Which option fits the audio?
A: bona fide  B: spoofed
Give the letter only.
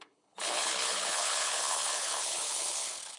B